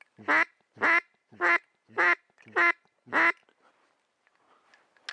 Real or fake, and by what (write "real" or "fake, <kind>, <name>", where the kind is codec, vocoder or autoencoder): real